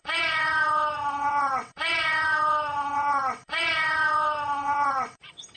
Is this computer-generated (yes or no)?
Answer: yes